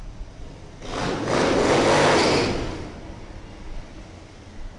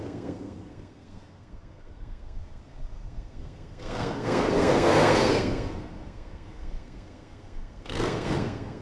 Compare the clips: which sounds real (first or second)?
first